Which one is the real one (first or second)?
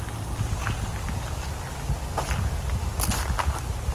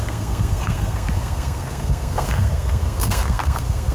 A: first